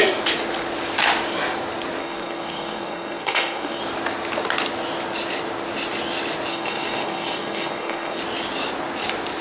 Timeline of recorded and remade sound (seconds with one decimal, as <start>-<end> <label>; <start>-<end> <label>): 0.0-2.0 recorded; 2.0-3.8 remade; 3.8-6.5 recorded; 6.5-8.2 remade; 8.2-9.4 recorded